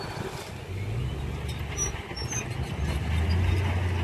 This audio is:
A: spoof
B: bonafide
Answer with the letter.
B